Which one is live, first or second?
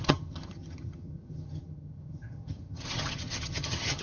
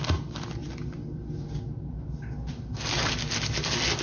second